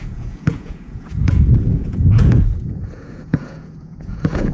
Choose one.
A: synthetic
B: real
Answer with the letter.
A